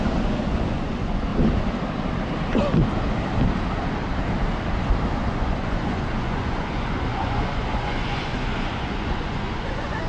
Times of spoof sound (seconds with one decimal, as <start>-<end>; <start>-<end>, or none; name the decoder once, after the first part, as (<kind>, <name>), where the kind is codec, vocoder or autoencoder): 0.0-1.3 (vocoder, Vocos); 5.2-10.1

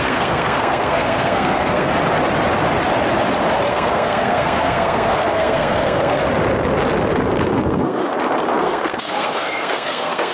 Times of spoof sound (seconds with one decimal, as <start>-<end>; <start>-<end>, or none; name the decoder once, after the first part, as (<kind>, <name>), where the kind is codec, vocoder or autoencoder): 0.0-1.9 (codec, SNAC); 3.7-6.2; 7.4-8.0; 8.5-10.3

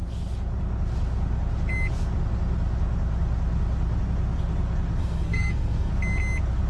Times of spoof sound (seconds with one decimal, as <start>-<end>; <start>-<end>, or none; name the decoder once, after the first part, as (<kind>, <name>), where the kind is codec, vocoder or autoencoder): 5.0-5.9 (codec, SNAC)

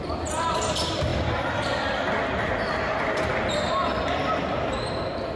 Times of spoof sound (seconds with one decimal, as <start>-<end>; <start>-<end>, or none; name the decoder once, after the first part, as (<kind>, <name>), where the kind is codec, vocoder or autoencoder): none

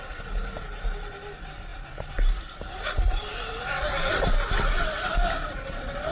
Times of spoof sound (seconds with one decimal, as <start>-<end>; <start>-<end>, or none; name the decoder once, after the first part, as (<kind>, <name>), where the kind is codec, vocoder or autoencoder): none